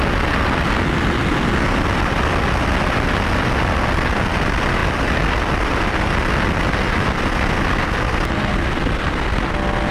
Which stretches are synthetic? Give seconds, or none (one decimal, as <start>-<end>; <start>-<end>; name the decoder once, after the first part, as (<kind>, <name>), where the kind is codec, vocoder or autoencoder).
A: none